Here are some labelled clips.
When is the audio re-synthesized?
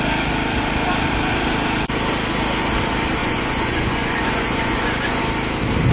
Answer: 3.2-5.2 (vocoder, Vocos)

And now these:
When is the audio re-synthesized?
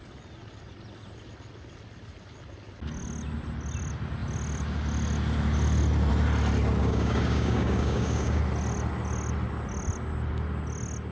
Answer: 6.8-8.4 (codec, DAC)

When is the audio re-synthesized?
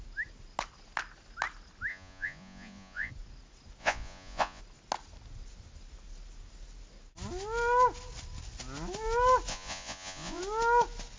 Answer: 1.9-3.1 (vocoder, Vocos); 3.8-4.6; 9.5-10.4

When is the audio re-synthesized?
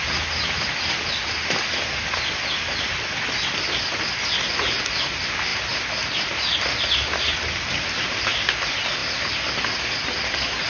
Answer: 9.0-9.5 (vocoder, BigVGAN v2)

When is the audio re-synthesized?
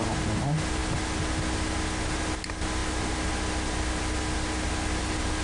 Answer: none